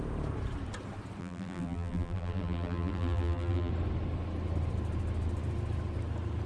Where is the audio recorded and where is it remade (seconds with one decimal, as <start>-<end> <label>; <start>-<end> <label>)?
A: 0.0-1.2 recorded; 1.2-3.7 remade; 3.7-6.5 recorded